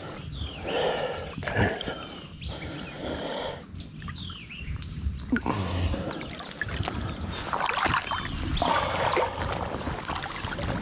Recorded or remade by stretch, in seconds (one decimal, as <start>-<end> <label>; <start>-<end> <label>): 0.0-5.5 recorded; 5.5-6.1 remade; 6.1-10.8 recorded